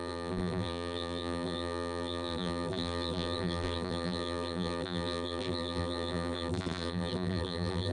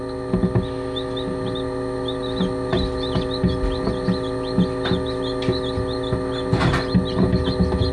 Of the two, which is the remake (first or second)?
first